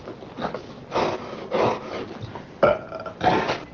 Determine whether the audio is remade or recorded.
recorded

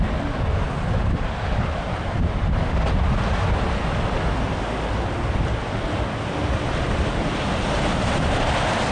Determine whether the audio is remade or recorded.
recorded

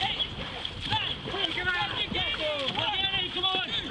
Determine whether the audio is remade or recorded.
recorded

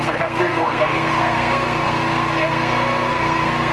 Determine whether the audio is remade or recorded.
remade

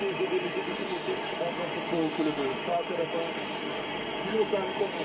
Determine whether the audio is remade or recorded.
recorded